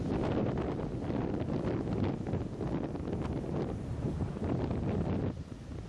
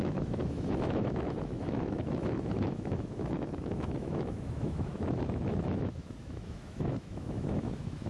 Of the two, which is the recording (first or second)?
first